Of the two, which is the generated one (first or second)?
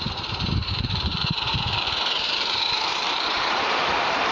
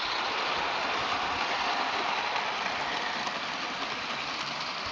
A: first